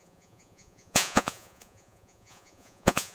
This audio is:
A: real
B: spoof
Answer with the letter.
B